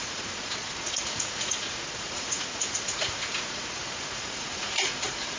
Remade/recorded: remade